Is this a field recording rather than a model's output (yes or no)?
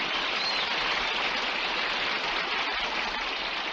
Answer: yes